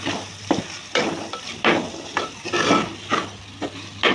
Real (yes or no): yes